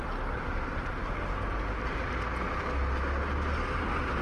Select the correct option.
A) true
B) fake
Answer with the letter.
A